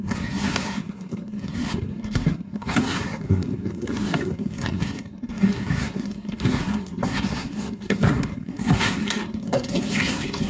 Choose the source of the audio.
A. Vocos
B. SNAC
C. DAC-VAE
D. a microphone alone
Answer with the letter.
B